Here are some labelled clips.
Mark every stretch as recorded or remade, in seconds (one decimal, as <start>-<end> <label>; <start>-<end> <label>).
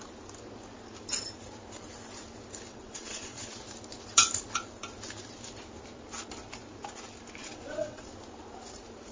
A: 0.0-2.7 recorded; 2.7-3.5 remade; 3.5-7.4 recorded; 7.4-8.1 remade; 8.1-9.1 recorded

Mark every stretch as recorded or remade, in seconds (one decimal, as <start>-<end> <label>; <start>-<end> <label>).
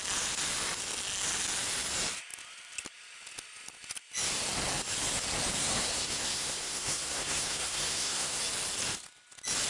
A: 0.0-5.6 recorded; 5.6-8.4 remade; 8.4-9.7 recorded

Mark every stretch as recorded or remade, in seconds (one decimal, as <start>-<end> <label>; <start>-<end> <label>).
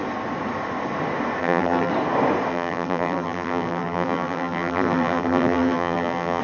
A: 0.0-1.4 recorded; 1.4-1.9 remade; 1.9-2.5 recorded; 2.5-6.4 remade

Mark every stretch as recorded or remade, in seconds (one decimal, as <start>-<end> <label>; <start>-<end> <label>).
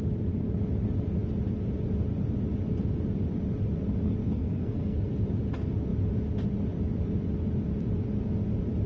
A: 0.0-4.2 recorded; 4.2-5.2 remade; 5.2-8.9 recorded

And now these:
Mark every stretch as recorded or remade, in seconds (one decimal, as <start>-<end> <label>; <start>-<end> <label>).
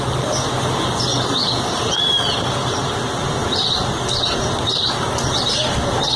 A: 0.0-6.2 recorded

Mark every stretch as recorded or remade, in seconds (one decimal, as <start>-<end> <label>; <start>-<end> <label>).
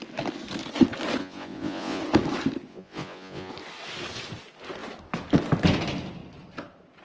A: 0.0-1.2 recorded; 1.2-2.0 remade; 2.0-2.7 recorded; 2.7-3.5 remade; 3.5-7.0 recorded